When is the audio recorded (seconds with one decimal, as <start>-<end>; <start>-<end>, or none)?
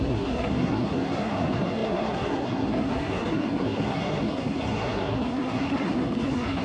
none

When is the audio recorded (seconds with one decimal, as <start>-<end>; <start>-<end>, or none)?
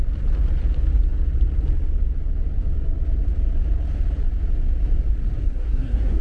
0.0-5.4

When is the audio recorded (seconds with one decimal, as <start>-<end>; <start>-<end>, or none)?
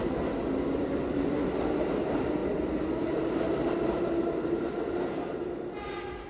0.0-6.3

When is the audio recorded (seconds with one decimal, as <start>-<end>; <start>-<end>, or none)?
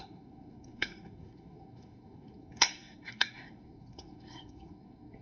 none